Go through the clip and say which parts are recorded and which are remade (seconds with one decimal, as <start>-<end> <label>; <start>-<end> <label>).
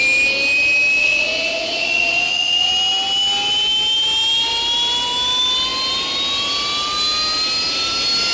0.0-1.0 recorded; 1.0-2.7 remade; 2.7-8.3 recorded